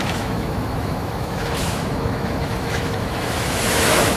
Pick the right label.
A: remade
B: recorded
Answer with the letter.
A